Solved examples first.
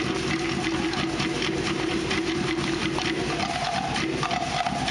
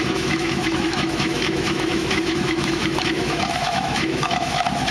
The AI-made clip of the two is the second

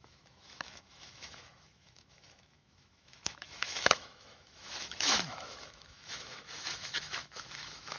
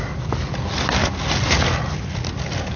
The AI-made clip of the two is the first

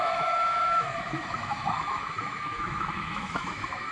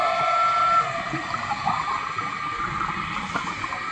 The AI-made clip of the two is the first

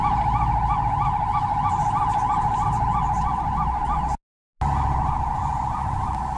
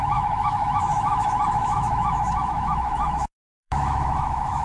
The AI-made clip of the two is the second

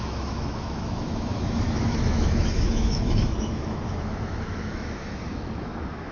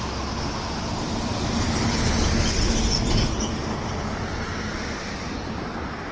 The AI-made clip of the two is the first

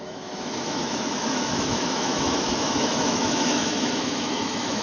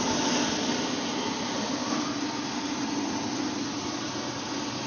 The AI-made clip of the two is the first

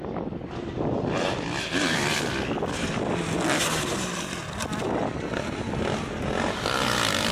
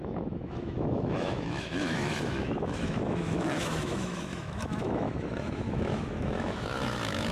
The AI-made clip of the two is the second